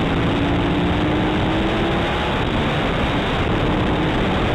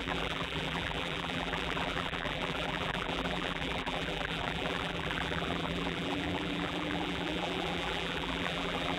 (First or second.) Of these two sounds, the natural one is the first